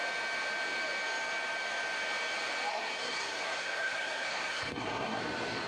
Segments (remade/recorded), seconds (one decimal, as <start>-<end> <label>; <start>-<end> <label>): 0.0-2.7 recorded; 2.7-5.2 remade; 5.2-5.7 recorded